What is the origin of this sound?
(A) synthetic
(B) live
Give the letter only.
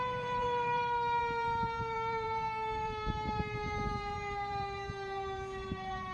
A